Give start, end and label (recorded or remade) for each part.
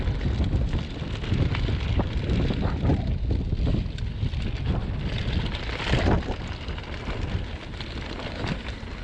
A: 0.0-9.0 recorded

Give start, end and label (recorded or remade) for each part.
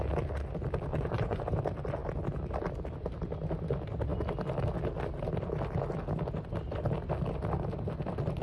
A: 0.0-0.9 recorded; 0.9-1.4 remade; 1.4-8.4 recorded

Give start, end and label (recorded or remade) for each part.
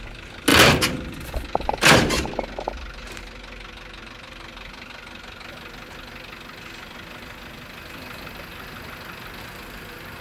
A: 0.0-10.2 recorded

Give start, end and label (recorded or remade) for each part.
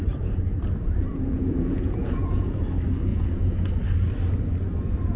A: 0.0-1.1 recorded; 1.1-2.6 remade; 2.6-3.1 recorded; 3.1-3.7 remade; 3.7-5.2 recorded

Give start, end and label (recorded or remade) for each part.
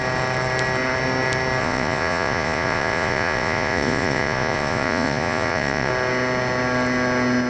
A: 0.0-1.6 recorded; 1.6-5.9 remade; 5.9-7.5 recorded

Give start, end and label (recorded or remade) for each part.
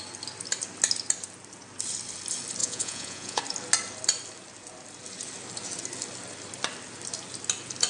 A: 0.0-2.6 recorded; 2.6-3.4 remade; 3.4-7.9 recorded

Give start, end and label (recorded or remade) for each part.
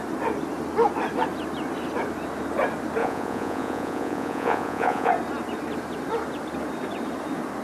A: 0.0-3.0 recorded; 3.0-5.1 remade; 5.1-7.6 recorded